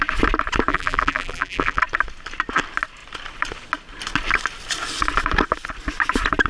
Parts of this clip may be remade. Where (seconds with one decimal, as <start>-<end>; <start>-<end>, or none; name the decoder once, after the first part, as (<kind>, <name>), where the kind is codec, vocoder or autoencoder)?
0.7-1.8 (vocoder, BigVGAN v2)